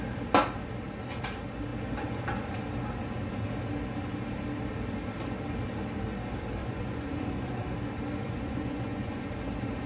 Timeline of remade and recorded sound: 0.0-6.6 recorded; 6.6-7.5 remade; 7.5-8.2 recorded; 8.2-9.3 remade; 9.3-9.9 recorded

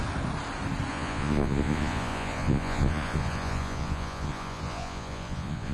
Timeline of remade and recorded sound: 0.0-0.9 recorded; 0.9-5.7 remade

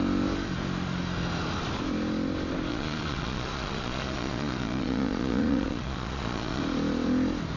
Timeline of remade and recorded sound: 0.0-2.7 recorded; 2.7-6.6 remade; 6.6-7.6 recorded

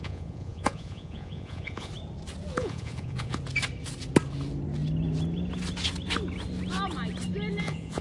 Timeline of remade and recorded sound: 0.0-1.9 remade; 1.9-2.6 recorded; 2.6-3.4 remade; 3.4-7.6 recorded; 7.6-8.0 remade

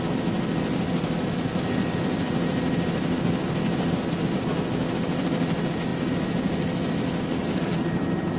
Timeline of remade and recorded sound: 0.0-8.4 recorded

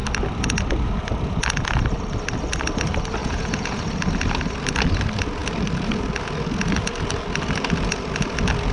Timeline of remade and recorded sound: 0.0-3.2 recorded; 3.2-3.8 remade; 3.8-8.7 recorded

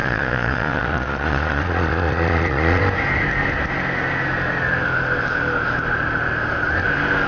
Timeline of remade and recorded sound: 0.0-2.8 remade; 2.8-7.3 recorded

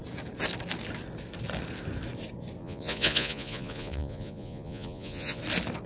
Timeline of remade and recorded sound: 0.0-2.6 recorded; 2.6-5.4 remade; 5.4-5.9 recorded